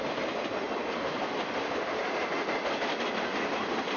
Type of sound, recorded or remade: recorded